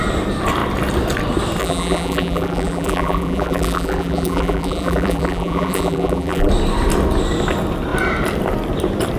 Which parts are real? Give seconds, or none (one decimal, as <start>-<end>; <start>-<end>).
0.0-1.6; 6.5-9.2